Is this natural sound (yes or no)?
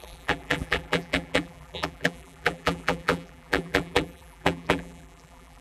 no